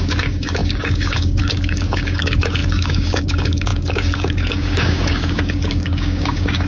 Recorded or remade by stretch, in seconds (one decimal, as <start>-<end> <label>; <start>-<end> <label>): 0.0-6.7 remade